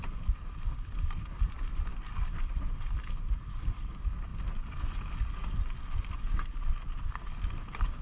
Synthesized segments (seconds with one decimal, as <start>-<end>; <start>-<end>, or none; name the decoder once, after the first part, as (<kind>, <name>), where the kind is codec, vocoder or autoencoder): 1.9-2.6 (vocoder, BigVGAN v2)